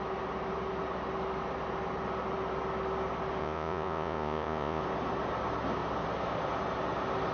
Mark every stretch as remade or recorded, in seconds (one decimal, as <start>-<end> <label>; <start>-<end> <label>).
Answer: 0.0-3.4 recorded; 3.4-4.8 remade; 4.8-7.3 recorded